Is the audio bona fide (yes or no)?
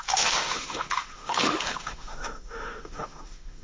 no